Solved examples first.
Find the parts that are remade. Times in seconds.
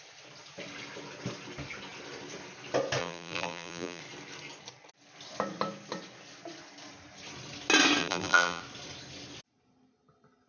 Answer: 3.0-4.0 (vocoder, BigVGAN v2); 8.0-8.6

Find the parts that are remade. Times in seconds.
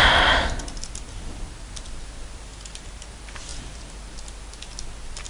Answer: 0.0-0.6 (vocoder, BigVGAN v2); 2.5-3.1